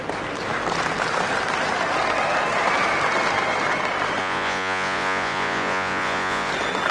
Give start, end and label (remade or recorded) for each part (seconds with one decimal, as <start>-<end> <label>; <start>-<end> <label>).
0.0-4.2 recorded; 4.2-6.5 remade; 6.5-6.9 recorded